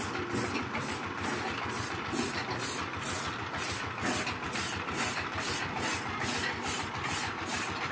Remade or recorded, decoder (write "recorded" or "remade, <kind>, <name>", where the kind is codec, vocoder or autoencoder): recorded